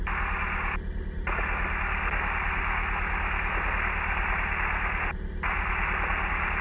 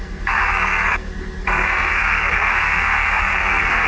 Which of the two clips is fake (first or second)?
second